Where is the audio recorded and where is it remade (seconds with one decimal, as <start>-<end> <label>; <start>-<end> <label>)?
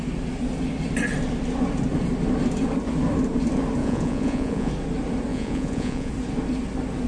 0.0-3.8 recorded; 3.8-4.7 remade; 4.7-5.3 recorded; 5.3-6.1 remade; 6.1-7.1 recorded